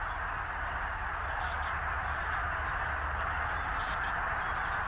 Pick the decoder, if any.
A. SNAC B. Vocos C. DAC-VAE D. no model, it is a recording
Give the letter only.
D